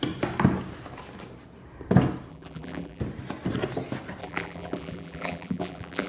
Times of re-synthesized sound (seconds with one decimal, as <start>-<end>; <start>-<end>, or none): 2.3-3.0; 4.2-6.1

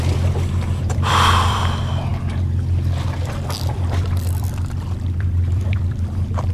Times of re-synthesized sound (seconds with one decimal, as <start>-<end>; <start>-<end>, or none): 0.0-2.1; 3.6-6.5

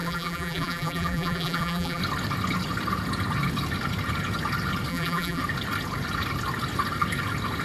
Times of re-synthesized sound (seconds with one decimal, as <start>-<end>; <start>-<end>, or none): 0.0-2.0; 4.9-5.4

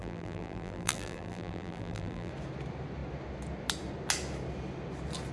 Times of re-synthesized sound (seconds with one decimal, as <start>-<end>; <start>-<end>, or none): 0.0-2.3

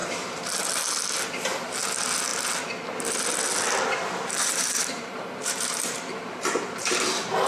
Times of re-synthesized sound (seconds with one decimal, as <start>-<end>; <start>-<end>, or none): 4.4-7.1